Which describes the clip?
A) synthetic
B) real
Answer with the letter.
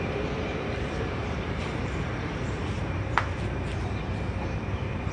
A